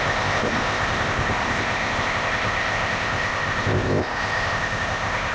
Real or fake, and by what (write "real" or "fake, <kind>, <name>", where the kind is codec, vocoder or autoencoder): fake, codec, ZipCodec